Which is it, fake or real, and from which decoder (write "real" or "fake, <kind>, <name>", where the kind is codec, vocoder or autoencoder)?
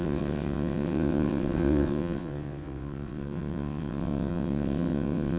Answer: fake, vocoder, WaveNeXt